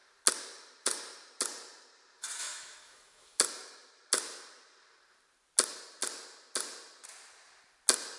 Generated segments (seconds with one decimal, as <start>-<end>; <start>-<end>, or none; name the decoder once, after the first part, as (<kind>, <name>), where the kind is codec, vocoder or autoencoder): 2.4-3.4 (autoencoder, DAC-VAE)